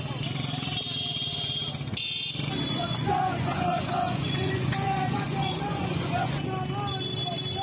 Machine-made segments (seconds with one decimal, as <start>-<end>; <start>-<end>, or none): 2.7-6.4